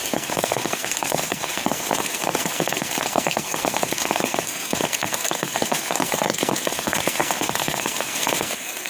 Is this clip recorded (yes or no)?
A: no